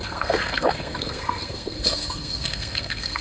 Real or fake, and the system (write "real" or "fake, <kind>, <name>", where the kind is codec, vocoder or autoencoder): fake, codec, SNAC